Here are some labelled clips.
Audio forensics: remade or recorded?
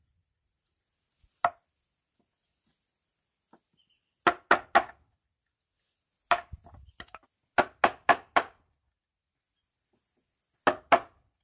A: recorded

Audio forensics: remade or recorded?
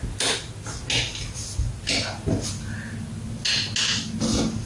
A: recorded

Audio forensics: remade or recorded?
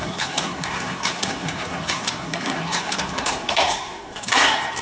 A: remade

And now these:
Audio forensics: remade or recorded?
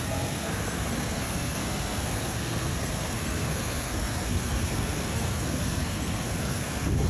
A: remade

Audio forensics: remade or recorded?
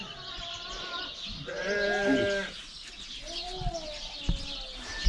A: recorded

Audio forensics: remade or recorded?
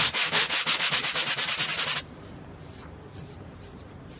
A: recorded